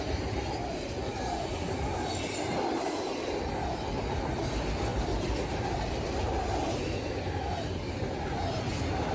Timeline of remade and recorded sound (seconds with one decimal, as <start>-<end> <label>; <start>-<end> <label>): 0.0-9.1 recorded

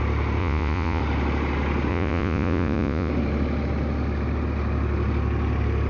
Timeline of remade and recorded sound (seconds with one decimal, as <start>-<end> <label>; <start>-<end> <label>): 0.0-0.4 recorded; 0.4-1.0 remade; 1.0-1.9 recorded; 1.9-3.1 remade; 3.1-5.9 recorded

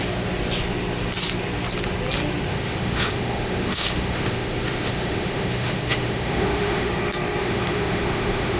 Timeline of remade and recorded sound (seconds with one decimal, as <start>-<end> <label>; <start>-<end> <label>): 0.0-2.5 recorded; 2.5-6.9 remade; 6.9-7.4 recorded; 7.4-8.6 remade

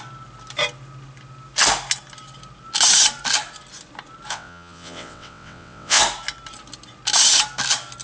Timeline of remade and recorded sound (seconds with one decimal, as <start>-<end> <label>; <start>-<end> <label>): 0.0-4.3 recorded; 4.3-6.0 remade; 6.0-8.0 recorded

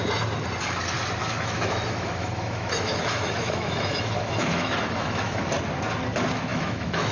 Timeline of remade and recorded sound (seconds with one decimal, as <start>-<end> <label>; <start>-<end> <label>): 0.0-1.2 recorded; 1.2-5.4 remade; 5.4-6.5 recorded; 6.5-7.1 remade

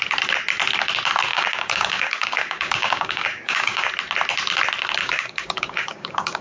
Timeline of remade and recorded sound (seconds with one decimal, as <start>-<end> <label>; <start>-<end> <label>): 0.0-1.3 recorded; 1.3-3.9 remade; 3.9-5.0 recorded; 5.0-6.4 remade

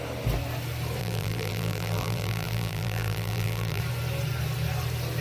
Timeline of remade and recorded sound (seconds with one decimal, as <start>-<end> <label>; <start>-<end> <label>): 0.0-1.0 recorded; 1.0-3.8 remade; 3.8-5.2 recorded